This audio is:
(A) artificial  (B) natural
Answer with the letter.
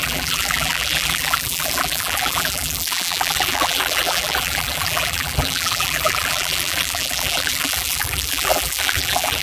A